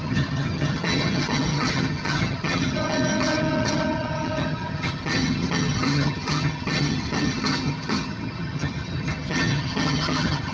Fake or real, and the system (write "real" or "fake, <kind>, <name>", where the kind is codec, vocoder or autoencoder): fake, vocoder, HiFi-GAN